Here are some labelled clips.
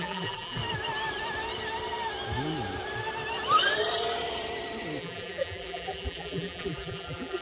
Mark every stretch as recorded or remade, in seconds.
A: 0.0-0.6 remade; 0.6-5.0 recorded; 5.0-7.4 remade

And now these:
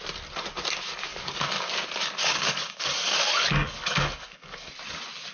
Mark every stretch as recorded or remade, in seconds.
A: 0.0-1.1 recorded; 1.1-1.7 remade; 1.7-2.2 recorded; 2.2-4.7 remade; 4.7-5.3 recorded

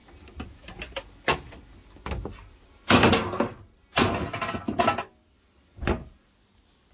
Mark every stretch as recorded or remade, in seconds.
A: 0.0-6.9 recorded

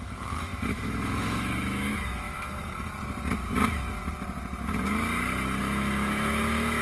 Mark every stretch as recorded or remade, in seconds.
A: 0.0-2.9 remade; 2.9-5.6 recorded; 5.6-6.8 remade

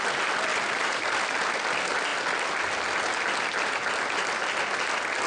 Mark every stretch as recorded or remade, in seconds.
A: 0.0-0.5 recorded; 0.5-1.3 remade; 1.3-5.3 recorded

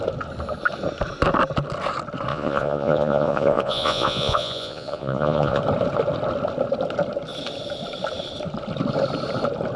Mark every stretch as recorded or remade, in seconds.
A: 0.0-2.3 recorded; 2.3-5.6 remade; 5.6-9.8 recorded

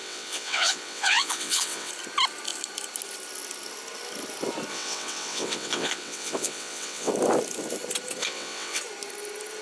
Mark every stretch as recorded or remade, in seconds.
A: 0.0-1.9 remade; 1.9-4.7 recorded; 4.7-7.1 remade; 7.1-8.2 recorded; 8.2-8.8 remade; 8.8-9.6 recorded